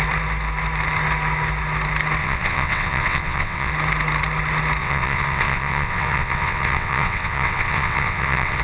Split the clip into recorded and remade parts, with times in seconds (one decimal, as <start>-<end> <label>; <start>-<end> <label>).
0.0-2.2 recorded; 2.2-3.7 remade; 3.7-4.8 recorded; 4.8-8.6 remade